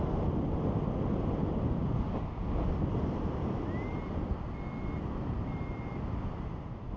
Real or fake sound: real